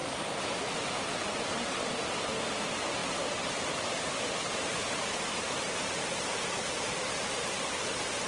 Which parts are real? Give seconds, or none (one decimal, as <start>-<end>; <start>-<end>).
0.0-1.7; 3.0-4.6